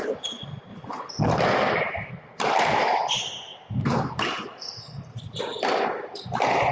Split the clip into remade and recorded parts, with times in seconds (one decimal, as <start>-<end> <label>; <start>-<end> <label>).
0.0-6.7 recorded